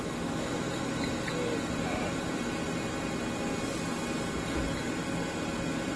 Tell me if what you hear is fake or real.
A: real